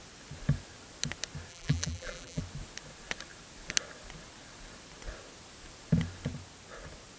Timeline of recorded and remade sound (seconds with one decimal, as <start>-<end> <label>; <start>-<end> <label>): 0.0-1.5 recorded; 1.5-2.4 remade; 2.4-7.2 recorded